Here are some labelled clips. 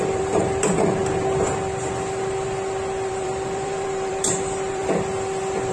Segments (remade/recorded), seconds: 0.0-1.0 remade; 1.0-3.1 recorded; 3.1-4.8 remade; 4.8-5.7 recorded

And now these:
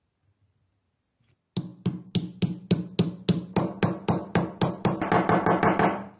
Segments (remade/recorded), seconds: 0.0-6.2 recorded

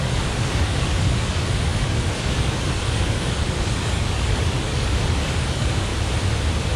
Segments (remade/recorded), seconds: 0.0-5.9 remade; 5.9-6.8 recorded

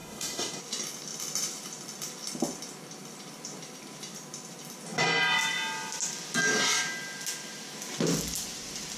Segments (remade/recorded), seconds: 0.0-0.6 remade; 0.6-9.0 recorded

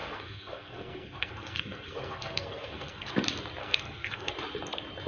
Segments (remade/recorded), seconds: 0.0-3.1 remade; 3.1-3.6 recorded; 3.6-4.3 remade; 4.3-5.1 recorded